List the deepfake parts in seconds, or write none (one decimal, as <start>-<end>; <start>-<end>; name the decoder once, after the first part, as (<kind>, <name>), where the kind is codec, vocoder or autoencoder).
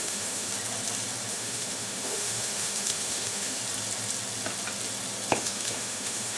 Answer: 0.0-0.5 (autoencoder, DAC-VAE); 1.3-3.6; 5.3-6.4